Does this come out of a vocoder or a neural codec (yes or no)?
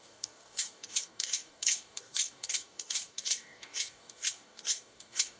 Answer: yes